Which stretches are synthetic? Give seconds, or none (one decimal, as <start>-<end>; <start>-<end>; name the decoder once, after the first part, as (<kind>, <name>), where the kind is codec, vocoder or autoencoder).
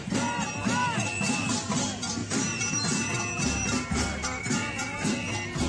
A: none